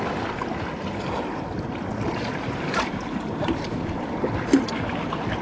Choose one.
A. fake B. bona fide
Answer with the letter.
B